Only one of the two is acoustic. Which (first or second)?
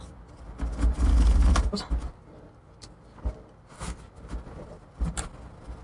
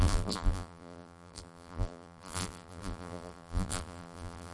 first